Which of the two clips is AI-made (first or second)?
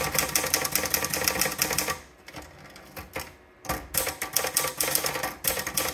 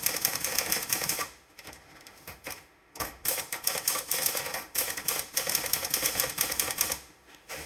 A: second